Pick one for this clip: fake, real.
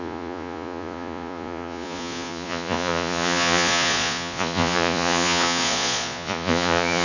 fake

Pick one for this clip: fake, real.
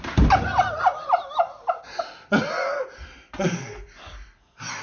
real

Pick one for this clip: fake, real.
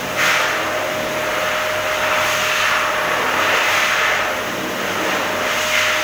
real